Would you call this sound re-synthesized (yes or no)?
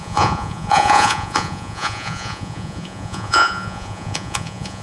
yes